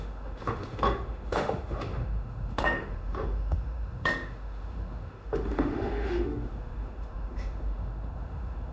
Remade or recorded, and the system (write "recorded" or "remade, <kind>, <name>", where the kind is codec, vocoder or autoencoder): remade, autoencoder, DAC-VAE